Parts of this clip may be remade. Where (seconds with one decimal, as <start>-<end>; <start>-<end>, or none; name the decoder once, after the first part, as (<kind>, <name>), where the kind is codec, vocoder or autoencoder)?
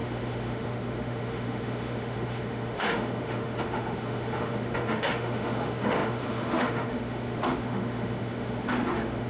0.0-9.3 (autoencoder, DAC-VAE)